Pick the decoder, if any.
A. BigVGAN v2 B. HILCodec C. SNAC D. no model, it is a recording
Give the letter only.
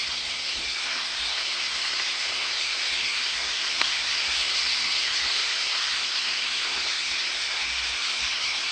C